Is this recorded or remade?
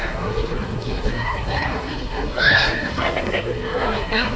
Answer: remade